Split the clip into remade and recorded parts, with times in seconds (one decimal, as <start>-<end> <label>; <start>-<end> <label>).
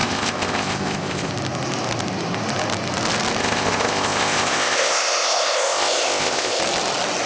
0.0-1.3 remade; 1.3-3.4 recorded; 3.4-6.6 remade; 6.6-7.3 recorded